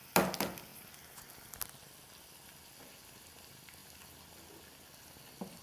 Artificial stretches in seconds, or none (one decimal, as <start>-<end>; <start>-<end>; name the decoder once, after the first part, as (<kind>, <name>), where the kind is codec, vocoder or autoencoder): none